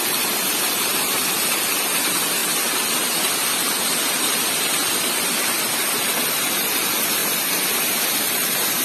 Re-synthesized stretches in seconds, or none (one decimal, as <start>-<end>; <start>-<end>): none

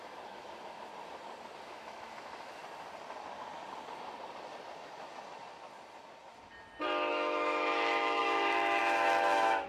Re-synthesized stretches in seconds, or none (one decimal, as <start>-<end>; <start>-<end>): 0.0-0.9; 1.6-2.6; 7.1-9.7

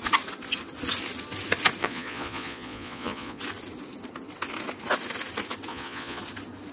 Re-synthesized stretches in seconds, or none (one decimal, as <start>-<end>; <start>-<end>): 1.8-3.4; 5.7-6.2

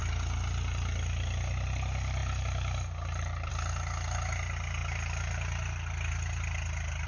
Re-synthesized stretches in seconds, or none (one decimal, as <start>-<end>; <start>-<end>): none

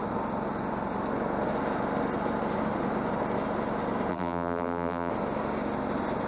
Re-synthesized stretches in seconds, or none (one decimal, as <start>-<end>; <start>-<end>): 4.1-5.1